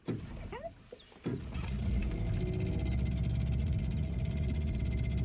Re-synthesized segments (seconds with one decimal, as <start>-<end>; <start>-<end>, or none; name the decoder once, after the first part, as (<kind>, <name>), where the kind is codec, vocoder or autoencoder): 1.3-2.1 (vocoder, Vocos); 3.6-4.8